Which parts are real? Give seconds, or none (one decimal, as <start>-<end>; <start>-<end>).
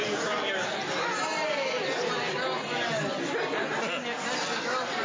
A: 0.0-5.0